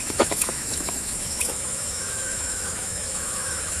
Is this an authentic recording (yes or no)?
no